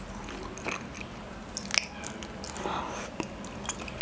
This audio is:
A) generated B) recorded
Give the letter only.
B